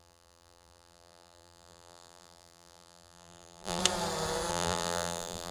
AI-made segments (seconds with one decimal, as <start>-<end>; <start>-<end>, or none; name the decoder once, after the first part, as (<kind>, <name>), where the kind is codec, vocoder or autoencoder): 0.0-3.8 (vocoder, BigVGAN v2); 4.5-5.5